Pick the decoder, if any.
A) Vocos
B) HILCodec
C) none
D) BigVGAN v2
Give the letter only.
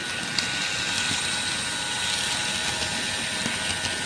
C